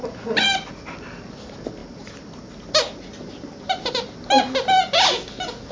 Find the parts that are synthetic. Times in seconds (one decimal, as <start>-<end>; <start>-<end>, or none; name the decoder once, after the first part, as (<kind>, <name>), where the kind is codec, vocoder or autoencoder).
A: 0.0-0.7 (vocoder, BigVGAN v2)